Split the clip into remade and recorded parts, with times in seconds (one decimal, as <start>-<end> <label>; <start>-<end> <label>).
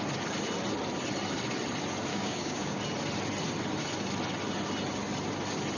0.0-2.1 recorded; 2.1-2.8 remade; 2.8-5.8 recorded